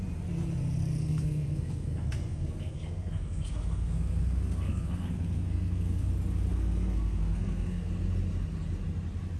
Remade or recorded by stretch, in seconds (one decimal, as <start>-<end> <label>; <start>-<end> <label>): 0.0-1.0 recorded; 1.0-6.1 remade; 6.1-6.5 recorded; 6.5-7.9 remade; 7.9-9.4 recorded